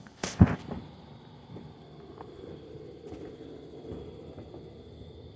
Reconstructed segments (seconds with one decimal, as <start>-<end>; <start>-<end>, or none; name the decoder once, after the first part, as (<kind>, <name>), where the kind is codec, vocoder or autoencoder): 0.0-0.6 (codec, ZipCodec)